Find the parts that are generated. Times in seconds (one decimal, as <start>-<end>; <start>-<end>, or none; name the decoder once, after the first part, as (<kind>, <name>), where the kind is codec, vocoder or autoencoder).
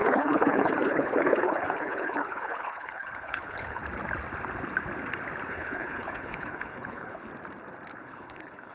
0.0-3.8 (codec, HILCodec); 5.5-7.3; 8.0-8.7